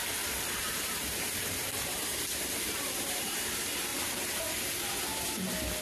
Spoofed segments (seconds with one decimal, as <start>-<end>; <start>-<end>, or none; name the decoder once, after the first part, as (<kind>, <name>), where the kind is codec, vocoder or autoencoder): 0.0-3.5 (vocoder, BigVGAN v2); 3.9-4.4